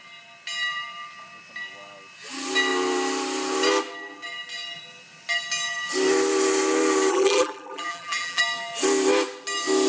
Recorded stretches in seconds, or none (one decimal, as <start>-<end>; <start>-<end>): 0.0-7.1; 8.4-9.9